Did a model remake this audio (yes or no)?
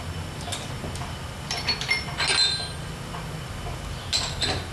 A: no